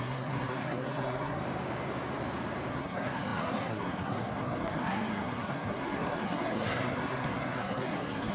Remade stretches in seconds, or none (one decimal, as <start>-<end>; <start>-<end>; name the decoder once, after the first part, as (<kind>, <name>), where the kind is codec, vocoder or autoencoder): 0.0-1.4 (codec, SNAC); 2.7-8.3